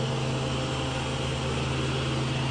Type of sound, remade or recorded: recorded